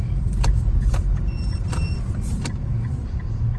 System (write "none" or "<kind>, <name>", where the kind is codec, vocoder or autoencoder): vocoder, BigVGAN v2